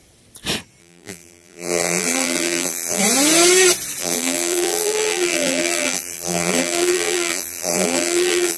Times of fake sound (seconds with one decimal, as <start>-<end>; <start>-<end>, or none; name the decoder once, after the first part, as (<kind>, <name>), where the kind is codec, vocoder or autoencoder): 0.8-3.0 (vocoder, BigVGAN v2); 4.0-8.6